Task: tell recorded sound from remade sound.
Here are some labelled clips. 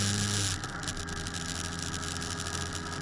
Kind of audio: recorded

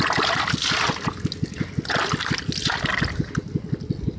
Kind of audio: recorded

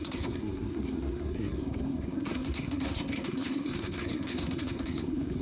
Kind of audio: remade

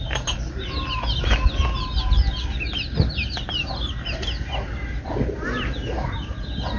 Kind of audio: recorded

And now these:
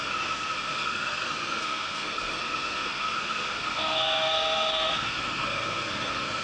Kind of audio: remade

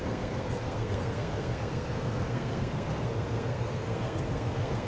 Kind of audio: remade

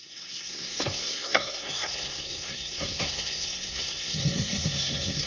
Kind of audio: remade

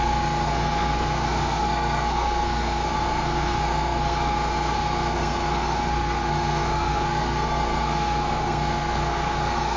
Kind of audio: remade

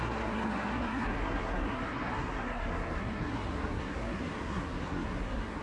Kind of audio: remade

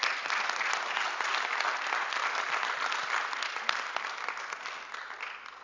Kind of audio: recorded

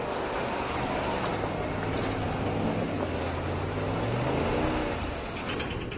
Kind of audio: recorded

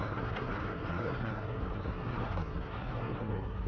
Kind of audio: remade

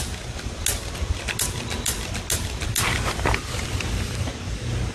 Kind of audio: recorded